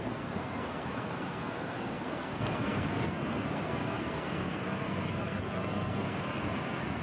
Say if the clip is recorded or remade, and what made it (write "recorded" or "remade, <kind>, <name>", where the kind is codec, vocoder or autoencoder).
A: remade, codec, SNAC